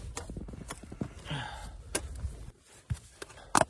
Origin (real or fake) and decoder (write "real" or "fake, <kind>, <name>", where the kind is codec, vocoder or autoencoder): real